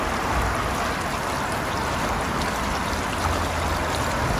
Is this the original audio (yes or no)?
yes